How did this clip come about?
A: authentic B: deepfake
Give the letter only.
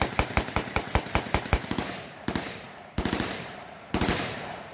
B